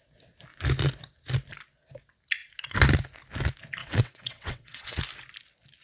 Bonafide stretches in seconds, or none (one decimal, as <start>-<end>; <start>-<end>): 0.0-3.8; 5.0-5.8